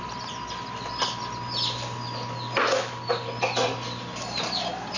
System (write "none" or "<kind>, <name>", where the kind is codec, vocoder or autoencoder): none